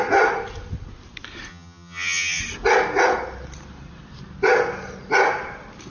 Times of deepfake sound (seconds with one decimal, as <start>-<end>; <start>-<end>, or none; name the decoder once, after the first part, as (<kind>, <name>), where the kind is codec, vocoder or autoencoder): 1.5-2.4 (vocoder, HiFi-GAN)